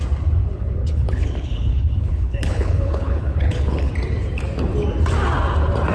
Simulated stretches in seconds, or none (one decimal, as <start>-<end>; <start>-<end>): 0.4-3.9